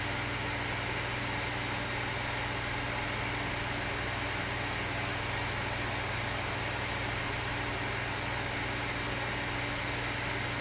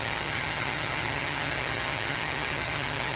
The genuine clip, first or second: first